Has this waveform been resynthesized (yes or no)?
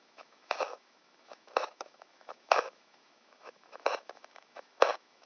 yes